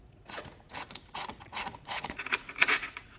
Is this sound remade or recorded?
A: remade